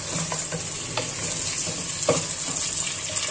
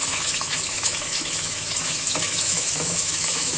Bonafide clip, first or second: first